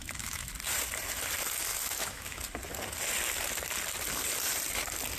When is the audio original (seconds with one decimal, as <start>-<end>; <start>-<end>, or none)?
0.5-1.7; 2.4-5.2